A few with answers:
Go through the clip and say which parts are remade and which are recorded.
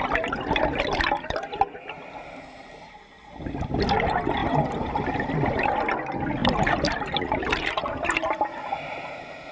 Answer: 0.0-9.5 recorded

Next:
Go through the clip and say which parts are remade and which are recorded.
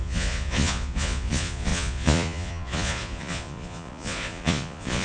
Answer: 0.0-5.0 remade